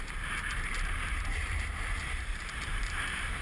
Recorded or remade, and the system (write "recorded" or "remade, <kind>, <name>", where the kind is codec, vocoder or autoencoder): remade, vocoder, BigVGAN v2